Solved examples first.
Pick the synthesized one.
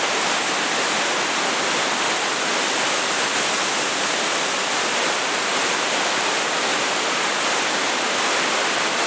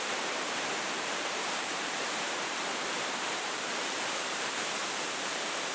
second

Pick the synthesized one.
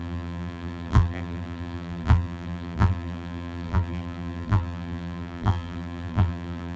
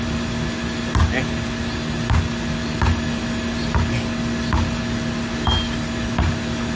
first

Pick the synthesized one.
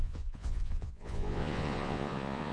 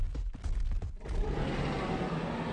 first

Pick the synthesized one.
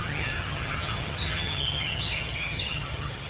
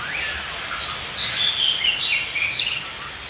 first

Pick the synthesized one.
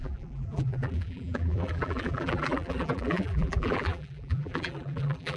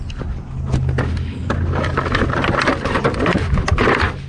first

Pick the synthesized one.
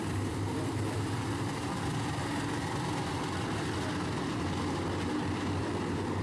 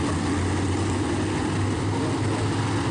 first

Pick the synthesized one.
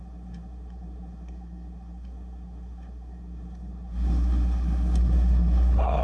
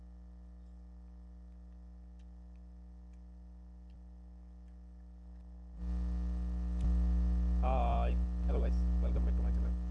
first